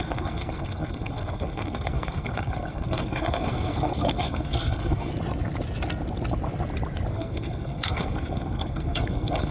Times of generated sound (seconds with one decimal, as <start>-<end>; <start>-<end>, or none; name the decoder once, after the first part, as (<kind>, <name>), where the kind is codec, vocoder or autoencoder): 0.0-5.1 (codec, SNAC); 7.1-9.5